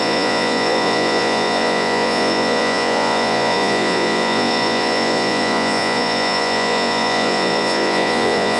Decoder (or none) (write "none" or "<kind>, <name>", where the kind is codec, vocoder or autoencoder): vocoder, Vocos